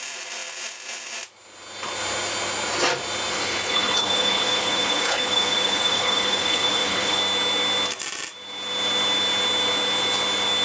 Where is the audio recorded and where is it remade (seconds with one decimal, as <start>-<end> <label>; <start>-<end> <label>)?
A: 0.0-3.3 recorded; 3.3-7.2 remade; 7.2-10.6 recorded